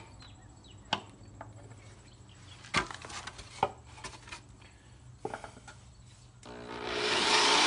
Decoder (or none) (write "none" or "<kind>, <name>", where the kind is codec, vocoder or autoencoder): none